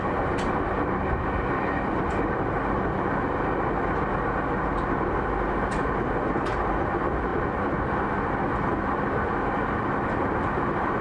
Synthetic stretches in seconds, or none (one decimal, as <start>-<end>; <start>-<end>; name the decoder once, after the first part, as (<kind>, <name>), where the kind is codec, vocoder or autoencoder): none